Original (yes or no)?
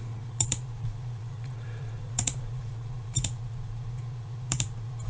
no